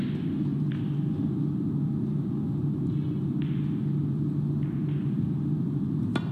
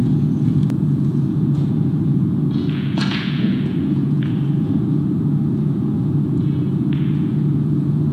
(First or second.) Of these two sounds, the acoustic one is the first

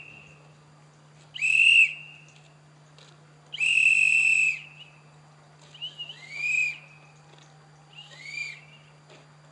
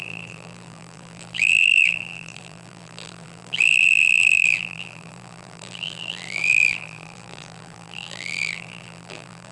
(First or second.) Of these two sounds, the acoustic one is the first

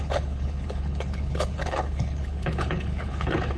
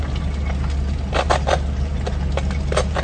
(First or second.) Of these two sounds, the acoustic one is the second